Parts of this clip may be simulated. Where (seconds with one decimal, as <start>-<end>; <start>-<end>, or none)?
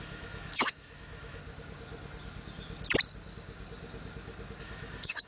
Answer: 0.0-1.4; 4.6-5.3